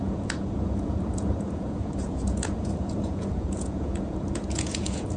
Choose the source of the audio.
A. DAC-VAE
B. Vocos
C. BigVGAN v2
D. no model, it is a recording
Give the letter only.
B